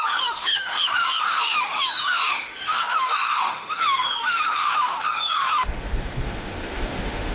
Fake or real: fake